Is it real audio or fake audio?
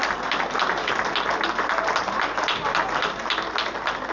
real